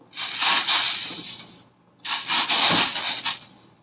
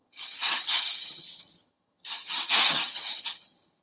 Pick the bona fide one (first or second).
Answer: first